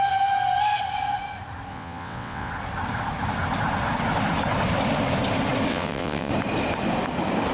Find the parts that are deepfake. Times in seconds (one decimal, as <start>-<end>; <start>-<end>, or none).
1.7-2.5; 5.7-6.3